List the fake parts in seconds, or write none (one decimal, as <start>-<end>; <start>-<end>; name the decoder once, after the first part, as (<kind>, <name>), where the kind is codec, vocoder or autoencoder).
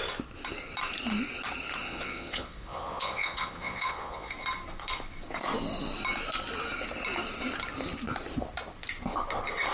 1.8-4.3 (vocoder, Vocos)